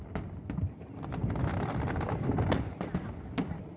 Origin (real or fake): real